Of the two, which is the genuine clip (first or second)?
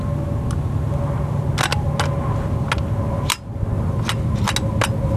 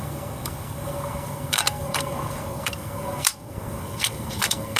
first